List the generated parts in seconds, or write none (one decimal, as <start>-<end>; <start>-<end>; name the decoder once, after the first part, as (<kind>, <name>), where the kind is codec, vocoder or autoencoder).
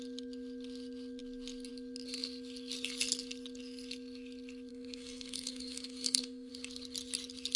4.7-6.5 (codec, SNAC)